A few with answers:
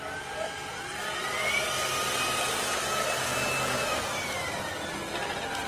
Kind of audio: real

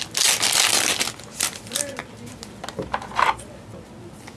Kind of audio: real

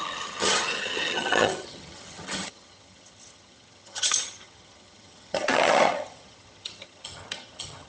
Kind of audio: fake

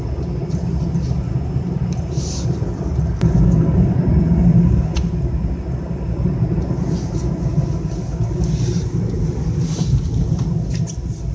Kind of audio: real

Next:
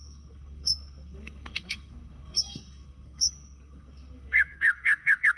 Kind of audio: fake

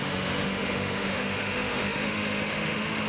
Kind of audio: fake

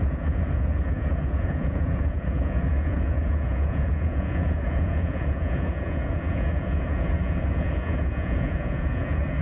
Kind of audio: fake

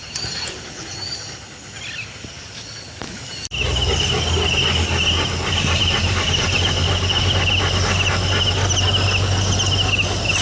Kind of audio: real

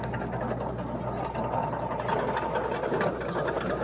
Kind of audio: real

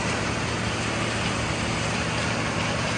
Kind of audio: real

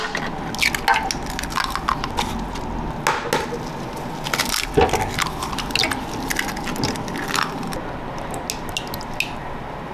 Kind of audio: real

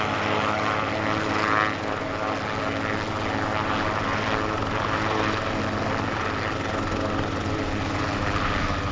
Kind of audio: real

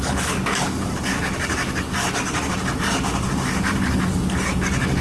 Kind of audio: fake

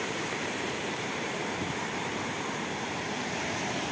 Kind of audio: fake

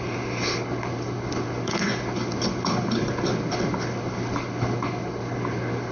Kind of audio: fake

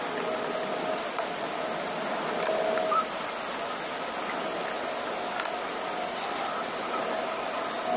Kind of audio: real